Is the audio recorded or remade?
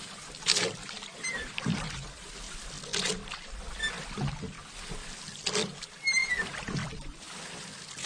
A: recorded